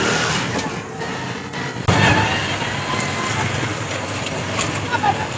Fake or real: real